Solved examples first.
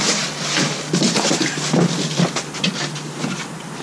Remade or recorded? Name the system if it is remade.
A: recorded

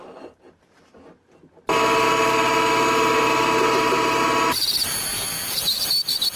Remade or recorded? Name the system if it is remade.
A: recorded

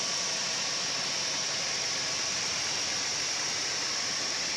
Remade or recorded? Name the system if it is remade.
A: recorded